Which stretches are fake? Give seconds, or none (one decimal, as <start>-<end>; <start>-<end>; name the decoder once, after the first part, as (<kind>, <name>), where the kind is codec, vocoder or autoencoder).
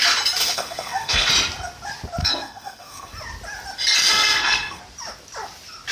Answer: 0.4-1.3 (codec, SNAC); 2.2-3.1; 4.0-4.8